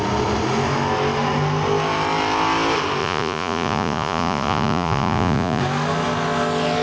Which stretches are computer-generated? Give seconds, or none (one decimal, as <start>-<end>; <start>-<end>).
3.0-5.6